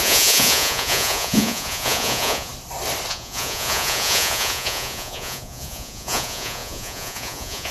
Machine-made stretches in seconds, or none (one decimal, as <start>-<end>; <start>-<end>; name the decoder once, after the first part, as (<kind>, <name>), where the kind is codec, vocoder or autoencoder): 0.0-2.5 (vocoder, Vocos); 3.1-7.7